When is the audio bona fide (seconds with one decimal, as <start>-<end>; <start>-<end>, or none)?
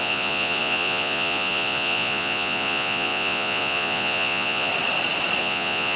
4.7-5.4